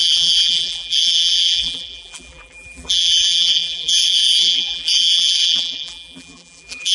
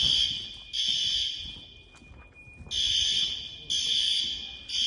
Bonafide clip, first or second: second